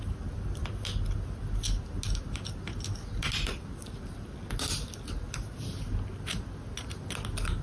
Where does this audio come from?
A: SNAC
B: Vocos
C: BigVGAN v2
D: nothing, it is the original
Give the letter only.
D